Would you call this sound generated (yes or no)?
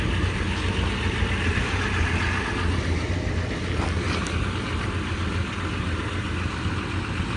no